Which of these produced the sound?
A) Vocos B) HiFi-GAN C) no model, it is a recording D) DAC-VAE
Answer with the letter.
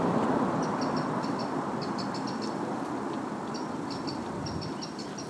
C